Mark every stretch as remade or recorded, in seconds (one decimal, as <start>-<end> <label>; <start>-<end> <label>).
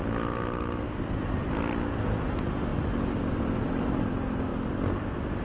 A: 0.0-0.6 recorded; 0.6-2.7 remade; 2.7-3.4 recorded; 3.4-4.5 remade; 4.5-5.4 recorded